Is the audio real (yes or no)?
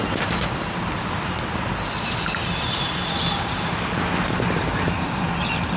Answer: yes